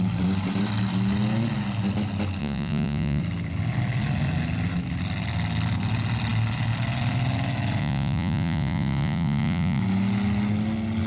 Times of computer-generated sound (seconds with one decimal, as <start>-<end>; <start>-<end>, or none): 2.4-3.2; 7.8-9.8